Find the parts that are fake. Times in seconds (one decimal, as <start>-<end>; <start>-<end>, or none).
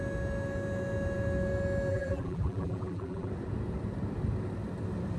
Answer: 1.9-3.3